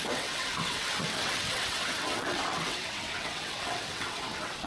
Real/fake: fake